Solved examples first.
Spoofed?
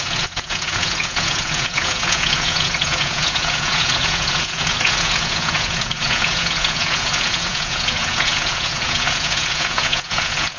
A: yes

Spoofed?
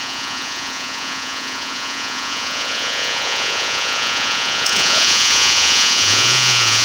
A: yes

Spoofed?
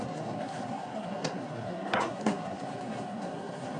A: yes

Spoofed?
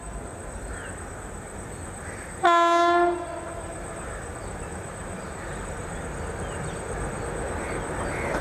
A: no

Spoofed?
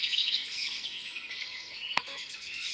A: yes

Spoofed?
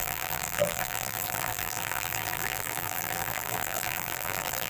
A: yes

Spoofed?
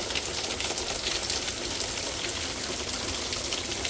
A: no